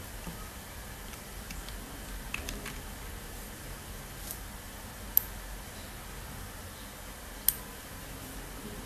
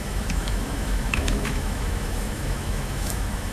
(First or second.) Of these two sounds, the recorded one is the first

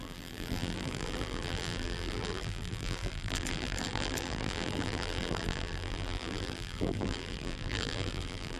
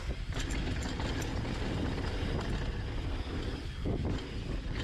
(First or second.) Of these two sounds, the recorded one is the second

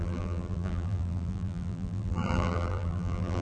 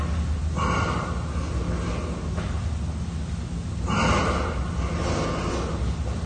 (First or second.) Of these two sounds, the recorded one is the second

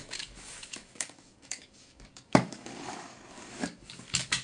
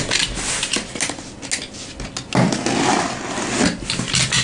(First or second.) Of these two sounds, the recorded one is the second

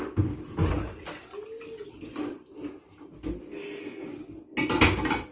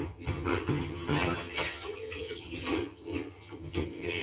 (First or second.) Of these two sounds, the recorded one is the first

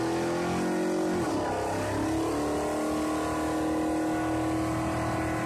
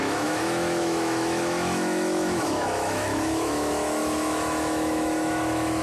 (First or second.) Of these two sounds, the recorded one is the first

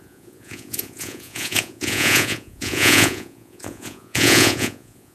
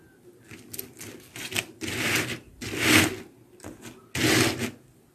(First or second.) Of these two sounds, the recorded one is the second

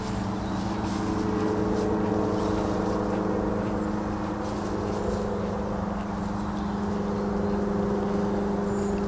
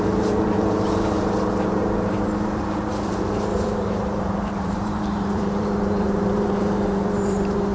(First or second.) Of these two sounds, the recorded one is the first